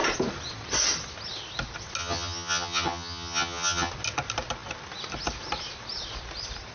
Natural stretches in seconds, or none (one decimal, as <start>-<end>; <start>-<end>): 0.0-2.0; 3.9-6.7